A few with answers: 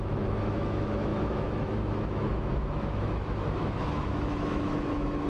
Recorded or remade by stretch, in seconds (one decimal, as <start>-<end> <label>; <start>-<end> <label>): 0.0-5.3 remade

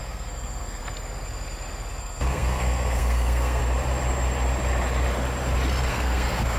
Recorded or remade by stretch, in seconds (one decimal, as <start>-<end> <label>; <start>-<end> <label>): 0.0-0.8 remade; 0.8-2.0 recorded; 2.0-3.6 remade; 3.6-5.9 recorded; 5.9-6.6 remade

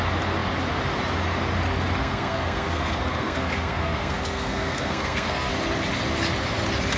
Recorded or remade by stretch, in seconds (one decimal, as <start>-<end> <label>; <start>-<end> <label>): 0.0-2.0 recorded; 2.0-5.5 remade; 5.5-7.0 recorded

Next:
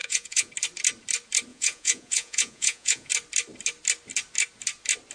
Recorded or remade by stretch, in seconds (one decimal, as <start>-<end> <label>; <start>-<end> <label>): 0.0-0.5 remade; 0.5-1.5 recorded; 1.5-3.1 remade; 3.1-5.1 recorded